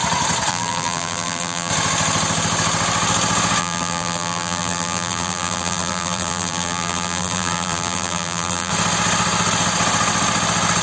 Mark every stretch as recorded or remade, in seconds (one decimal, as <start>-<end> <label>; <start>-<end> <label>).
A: 0.0-0.5 recorded; 0.5-1.7 remade; 1.7-3.6 recorded; 3.6-8.7 remade; 8.7-10.8 recorded